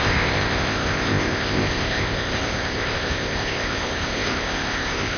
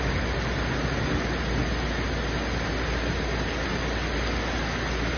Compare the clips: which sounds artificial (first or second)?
first